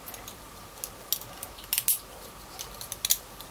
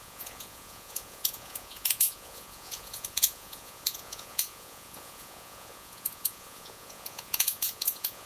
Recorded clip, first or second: first